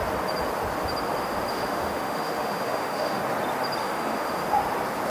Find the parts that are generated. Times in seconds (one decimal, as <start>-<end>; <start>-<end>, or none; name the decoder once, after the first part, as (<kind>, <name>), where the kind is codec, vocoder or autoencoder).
1.5-3.2 (autoencoder, DAC-VAE); 3.8-4.3